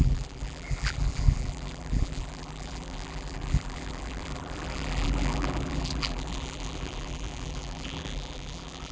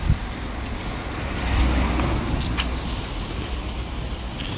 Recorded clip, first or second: second